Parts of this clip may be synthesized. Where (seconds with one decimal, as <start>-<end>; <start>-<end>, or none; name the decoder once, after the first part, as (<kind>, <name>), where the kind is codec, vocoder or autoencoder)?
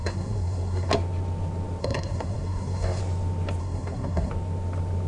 0.0-0.9 (codec, SNAC); 1.8-3.0; 3.6-4.3